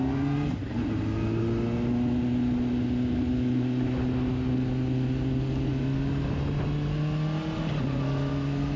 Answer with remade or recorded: recorded